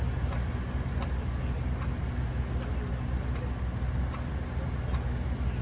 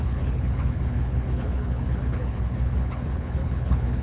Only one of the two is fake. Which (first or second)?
second